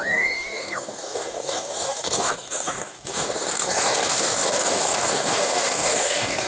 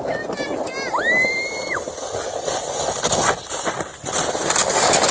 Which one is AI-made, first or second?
first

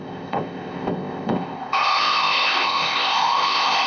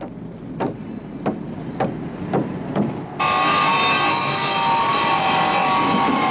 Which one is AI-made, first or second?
first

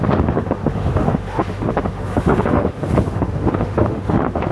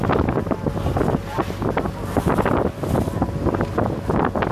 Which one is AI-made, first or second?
first